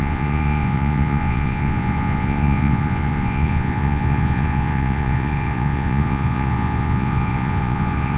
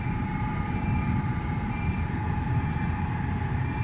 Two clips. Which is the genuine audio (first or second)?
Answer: second